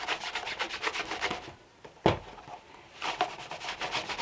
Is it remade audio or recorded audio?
recorded